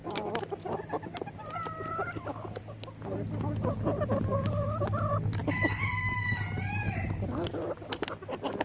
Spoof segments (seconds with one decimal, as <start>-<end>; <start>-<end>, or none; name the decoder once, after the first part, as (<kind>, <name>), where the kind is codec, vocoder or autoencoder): 0.0-2.6 (vocoder, BigVGAN v2); 5.4-7.5